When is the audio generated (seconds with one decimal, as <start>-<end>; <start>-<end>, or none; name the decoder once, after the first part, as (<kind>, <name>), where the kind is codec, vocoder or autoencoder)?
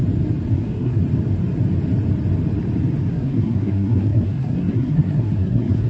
0.5-1.0 (codec, SNAC); 3.1-5.9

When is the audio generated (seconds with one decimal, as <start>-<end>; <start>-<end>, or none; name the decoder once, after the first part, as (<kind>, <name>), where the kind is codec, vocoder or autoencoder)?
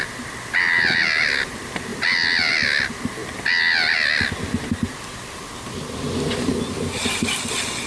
none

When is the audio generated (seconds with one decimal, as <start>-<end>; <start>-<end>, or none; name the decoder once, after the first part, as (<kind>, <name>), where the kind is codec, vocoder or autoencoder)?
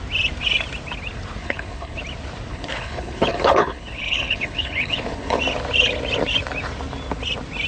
1.4-2.0 (codec, HILCodec); 2.5-5.4